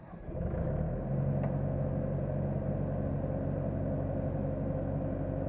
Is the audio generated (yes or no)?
no